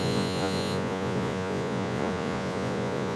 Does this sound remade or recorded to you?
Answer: remade